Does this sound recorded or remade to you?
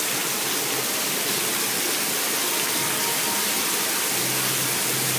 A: recorded